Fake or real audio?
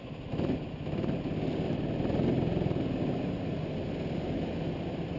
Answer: real